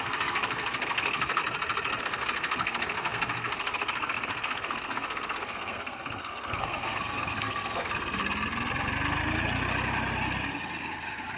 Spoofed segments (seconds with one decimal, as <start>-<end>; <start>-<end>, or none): 0.0-1.4; 2.0-8.2